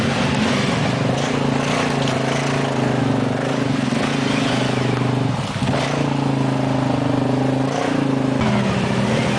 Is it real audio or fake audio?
real